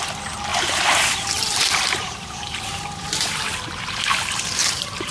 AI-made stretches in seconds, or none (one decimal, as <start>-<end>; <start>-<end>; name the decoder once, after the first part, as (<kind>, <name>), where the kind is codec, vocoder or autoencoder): 0.5-3.6 (vocoder, BigVGAN v2); 4.6-5.1